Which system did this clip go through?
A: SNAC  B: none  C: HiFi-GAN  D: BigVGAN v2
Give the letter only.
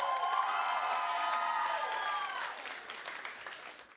B